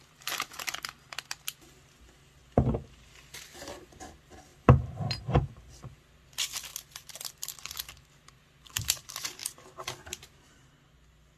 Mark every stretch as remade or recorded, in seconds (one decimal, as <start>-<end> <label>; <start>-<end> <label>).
0.0-4.5 recorded; 4.5-5.5 remade; 5.5-11.4 recorded